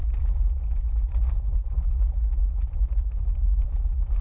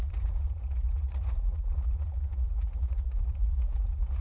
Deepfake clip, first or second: second